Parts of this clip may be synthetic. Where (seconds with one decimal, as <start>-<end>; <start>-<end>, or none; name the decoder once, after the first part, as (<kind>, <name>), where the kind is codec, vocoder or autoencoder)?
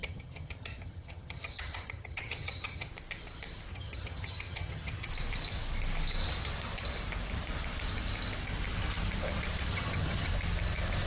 0.0-2.9 (vocoder, HiFi-GAN); 3.7-5.1; 9.7-10.3